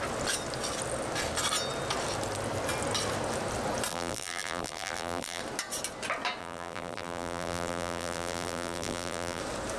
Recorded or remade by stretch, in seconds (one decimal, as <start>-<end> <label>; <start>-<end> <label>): 0.0-3.9 recorded; 3.9-5.4 remade; 5.4-6.4 recorded; 6.4-9.4 remade; 9.4-9.8 recorded